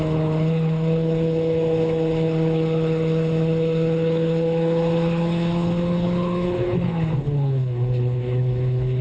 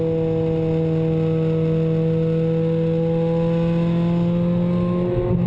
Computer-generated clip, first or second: first